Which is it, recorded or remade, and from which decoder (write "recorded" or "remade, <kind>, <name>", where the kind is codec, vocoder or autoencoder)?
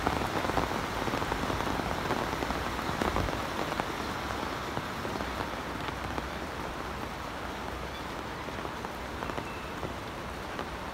recorded